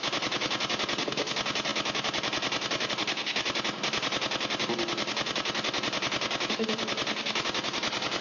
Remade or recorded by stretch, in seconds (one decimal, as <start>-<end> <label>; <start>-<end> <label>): 0.0-8.2 recorded